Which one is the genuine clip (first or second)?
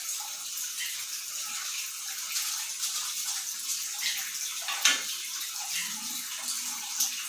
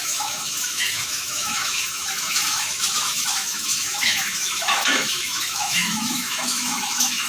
first